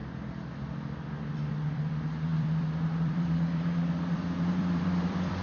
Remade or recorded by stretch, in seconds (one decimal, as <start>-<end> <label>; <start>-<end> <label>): 0.0-1.5 recorded; 1.5-5.4 remade